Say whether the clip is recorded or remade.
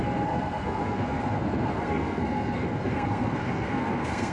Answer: remade